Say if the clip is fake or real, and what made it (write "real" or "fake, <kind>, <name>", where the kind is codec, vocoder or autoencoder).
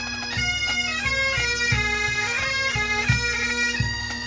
real